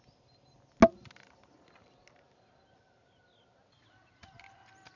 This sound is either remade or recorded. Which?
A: recorded